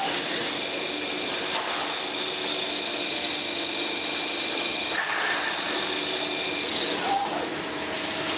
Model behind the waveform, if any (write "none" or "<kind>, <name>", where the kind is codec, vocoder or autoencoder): none